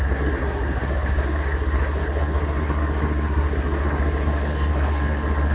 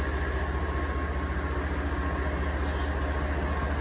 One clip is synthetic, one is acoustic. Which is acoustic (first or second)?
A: second